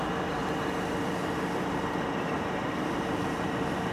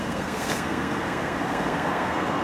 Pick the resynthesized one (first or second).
second